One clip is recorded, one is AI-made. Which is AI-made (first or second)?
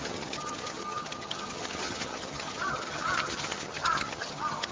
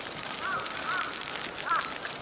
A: first